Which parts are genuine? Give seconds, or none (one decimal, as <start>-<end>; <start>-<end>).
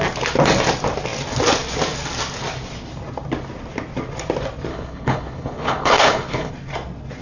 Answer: 0.0-4.7; 6.5-7.2